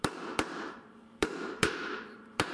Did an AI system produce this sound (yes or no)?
yes